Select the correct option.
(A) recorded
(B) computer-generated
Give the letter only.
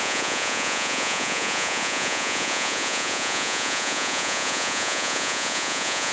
B